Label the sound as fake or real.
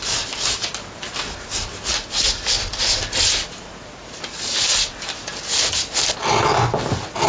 real